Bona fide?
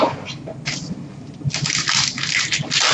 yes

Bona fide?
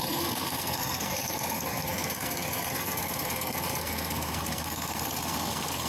no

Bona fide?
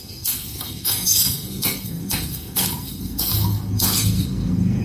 no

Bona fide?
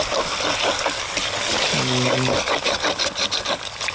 yes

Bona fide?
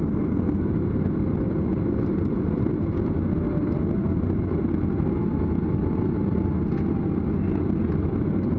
yes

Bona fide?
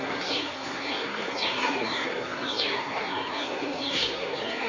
no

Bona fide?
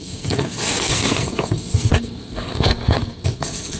no